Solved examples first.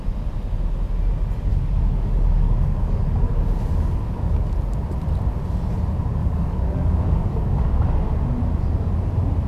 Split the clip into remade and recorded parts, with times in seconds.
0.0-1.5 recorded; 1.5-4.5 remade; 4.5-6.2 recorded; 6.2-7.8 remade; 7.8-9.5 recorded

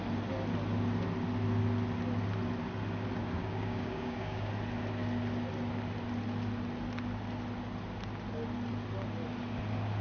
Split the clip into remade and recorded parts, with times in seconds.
0.0-3.2 recorded; 3.2-4.5 remade; 4.5-10.0 recorded

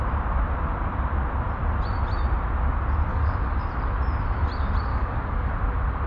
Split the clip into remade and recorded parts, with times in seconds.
0.0-3.1 recorded; 3.1-3.7 remade; 3.7-4.9 recorded; 4.9-5.5 remade; 5.5-6.1 recorded